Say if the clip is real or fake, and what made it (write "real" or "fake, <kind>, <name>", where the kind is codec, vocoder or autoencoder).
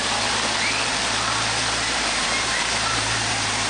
fake, vocoder, BigVGAN v2